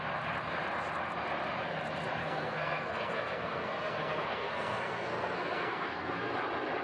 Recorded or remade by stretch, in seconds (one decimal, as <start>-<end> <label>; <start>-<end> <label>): 0.0-2.2 recorded; 2.2-6.3 remade; 6.3-6.8 recorded